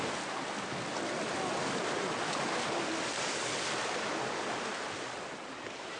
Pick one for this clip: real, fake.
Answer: real